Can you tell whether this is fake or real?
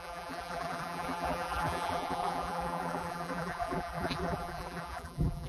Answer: fake